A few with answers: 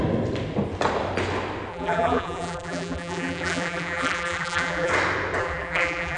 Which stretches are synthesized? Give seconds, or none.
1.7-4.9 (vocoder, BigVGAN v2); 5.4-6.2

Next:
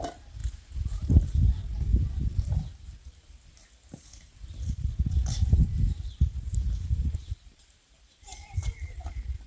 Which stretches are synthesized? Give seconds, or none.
5.6-8.7 (vocoder, BigVGAN v2)

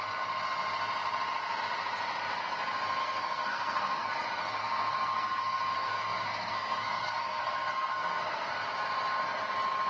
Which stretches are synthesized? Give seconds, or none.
3.0-4.1 (codec, SNAC); 4.6-8.5